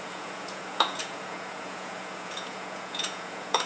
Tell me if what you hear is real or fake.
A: fake